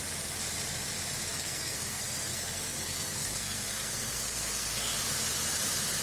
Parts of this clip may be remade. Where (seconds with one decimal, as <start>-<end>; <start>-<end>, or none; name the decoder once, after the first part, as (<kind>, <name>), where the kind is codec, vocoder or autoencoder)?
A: 1.3-4.9 (codec, SNAC)